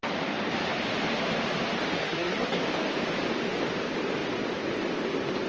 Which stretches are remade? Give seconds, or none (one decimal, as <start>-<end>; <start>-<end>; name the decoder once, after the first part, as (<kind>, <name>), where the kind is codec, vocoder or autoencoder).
2.0-2.6 (codec, SNAC)